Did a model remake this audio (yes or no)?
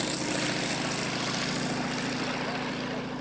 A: no